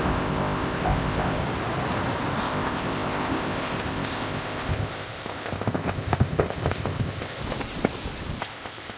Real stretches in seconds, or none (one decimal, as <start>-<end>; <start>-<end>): 1.4-2.4; 7.4-8.4